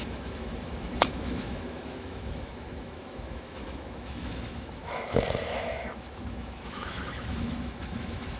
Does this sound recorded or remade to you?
remade